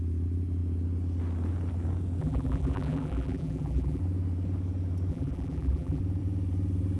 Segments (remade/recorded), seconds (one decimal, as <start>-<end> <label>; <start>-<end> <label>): 0.0-2.2 recorded; 2.2-4.0 remade; 4.0-5.1 recorded; 5.1-6.0 remade; 6.0-7.0 recorded